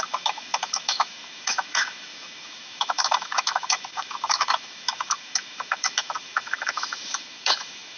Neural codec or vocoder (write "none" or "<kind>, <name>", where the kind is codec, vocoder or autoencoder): autoencoder, DAC-VAE